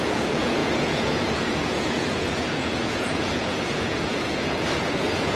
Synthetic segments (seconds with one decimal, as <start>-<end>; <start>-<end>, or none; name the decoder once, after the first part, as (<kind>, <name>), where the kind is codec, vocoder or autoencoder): 0.0-5.4 (vocoder, Vocos)